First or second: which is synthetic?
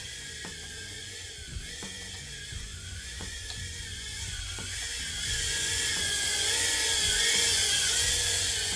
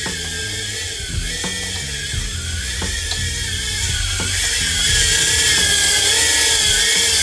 first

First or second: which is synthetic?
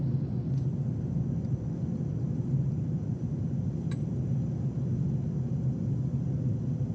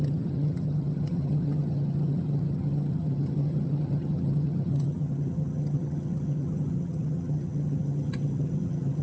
second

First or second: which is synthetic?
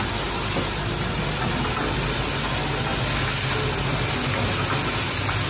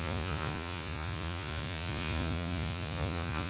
second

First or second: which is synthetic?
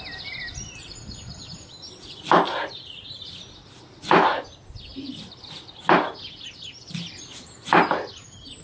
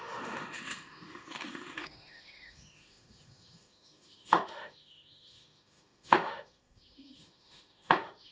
second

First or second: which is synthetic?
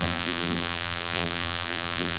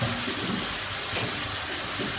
first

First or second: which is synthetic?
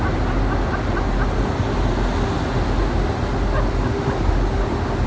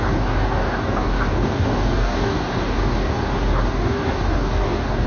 second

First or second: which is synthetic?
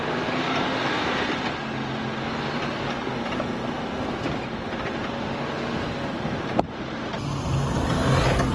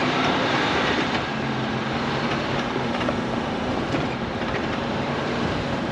second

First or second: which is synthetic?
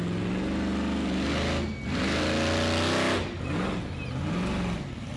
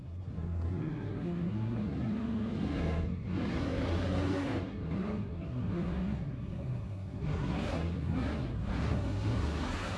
second